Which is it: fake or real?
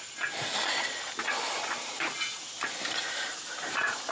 real